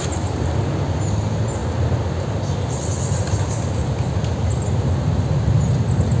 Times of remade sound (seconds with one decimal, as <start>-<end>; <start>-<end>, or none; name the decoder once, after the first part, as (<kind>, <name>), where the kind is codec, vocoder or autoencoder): none